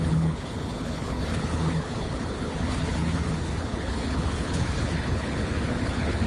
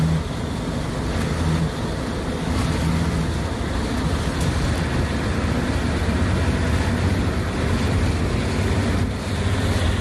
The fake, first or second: first